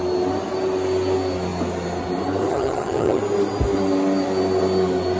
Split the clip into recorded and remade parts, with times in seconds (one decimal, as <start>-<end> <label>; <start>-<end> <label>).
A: 0.0-2.5 recorded; 2.5-3.2 remade; 3.2-5.2 recorded